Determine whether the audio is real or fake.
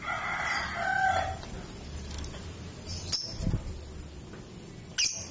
real